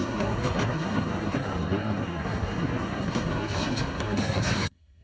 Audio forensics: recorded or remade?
remade